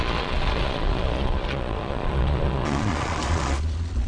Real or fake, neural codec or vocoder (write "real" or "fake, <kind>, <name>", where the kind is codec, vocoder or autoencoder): fake, vocoder, Vocos